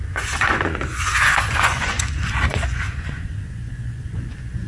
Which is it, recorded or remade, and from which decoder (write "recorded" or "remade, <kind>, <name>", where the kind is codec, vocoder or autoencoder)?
remade, vocoder, Vocos